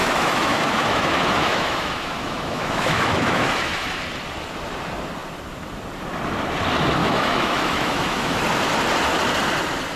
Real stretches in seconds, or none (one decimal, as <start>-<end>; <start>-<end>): 4.0-7.0; 8.4-10.0